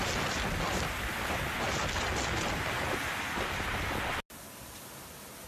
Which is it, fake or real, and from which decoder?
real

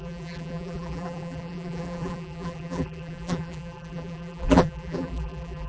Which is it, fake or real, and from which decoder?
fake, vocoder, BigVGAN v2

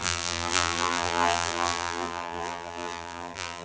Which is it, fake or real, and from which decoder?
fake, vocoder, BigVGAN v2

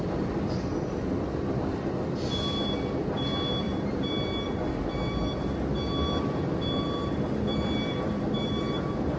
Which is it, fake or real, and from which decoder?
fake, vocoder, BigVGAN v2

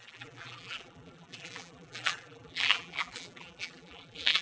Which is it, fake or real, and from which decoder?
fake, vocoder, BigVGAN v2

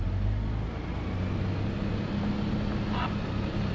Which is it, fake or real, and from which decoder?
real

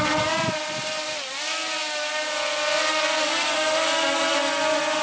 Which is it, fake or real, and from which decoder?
real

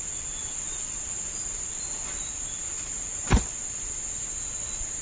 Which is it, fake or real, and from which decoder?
real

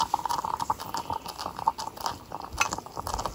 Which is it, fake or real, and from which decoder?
real